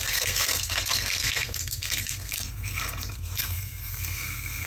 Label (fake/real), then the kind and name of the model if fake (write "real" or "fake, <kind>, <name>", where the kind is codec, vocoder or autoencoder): fake, codec, SNAC